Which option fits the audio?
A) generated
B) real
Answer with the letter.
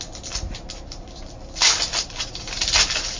B